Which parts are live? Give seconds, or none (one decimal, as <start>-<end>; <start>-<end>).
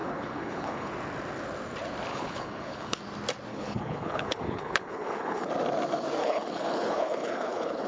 0.9-2.1; 3.0-3.5; 5.5-6.2